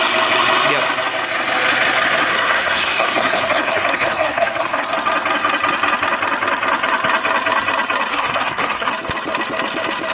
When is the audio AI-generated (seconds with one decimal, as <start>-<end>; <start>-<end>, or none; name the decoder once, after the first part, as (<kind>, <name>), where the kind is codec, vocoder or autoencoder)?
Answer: 2.3-4.9 (codec, SNAC); 8.1-8.9